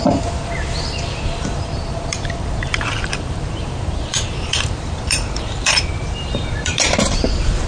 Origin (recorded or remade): remade